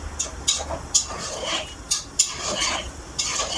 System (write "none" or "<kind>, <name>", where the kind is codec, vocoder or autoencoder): none